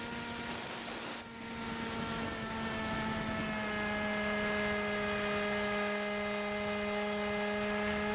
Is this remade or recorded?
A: recorded